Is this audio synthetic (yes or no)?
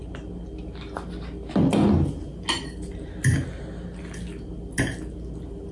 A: no